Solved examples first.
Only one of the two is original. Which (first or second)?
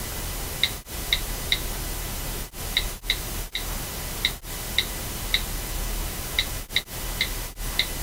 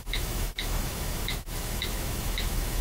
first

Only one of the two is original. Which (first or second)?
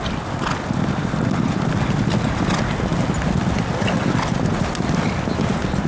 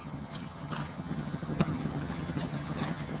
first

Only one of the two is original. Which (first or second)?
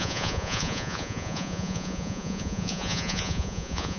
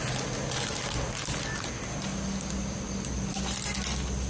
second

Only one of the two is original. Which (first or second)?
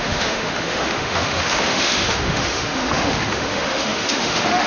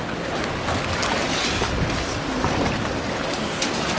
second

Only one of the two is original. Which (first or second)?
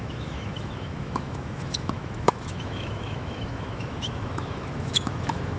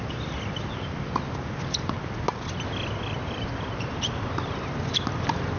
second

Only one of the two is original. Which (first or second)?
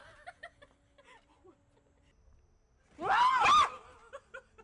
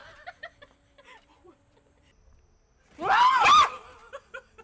first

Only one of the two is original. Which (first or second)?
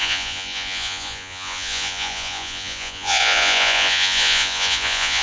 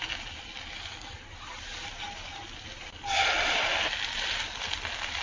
second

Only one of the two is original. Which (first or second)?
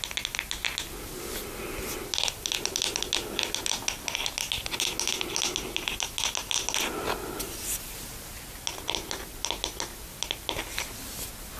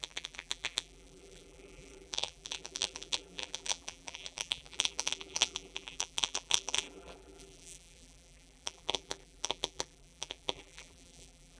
first